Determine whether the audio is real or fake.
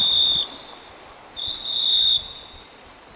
real